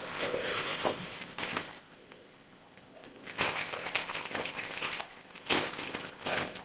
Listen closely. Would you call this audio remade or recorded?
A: remade